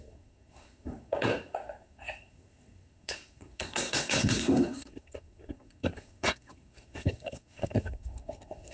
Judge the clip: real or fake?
fake